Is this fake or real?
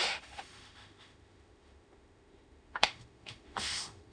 fake